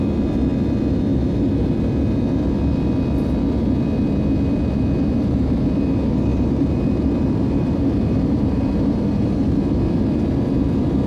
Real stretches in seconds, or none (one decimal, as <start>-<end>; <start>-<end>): 0.0-6.3; 9.6-11.1